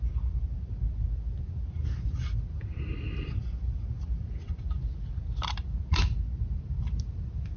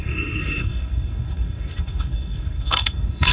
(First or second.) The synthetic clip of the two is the second